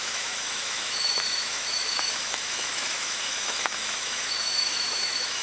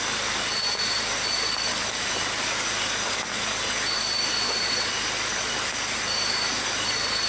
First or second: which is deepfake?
first